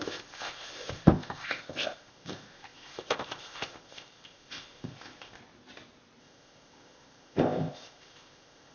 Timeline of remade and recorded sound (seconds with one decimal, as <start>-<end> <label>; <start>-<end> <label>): 0.0-5.4 remade; 5.4-6.2 recorded; 6.2-8.7 remade